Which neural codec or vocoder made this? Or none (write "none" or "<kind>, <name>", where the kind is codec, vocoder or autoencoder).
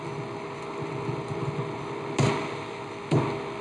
none